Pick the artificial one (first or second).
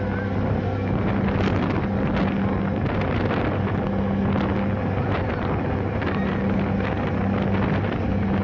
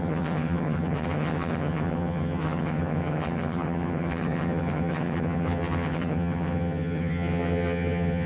second